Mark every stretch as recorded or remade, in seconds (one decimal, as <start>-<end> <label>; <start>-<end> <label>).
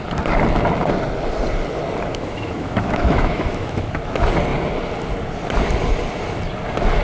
0.0-2.1 recorded; 2.1-4.0 remade; 4.0-7.0 recorded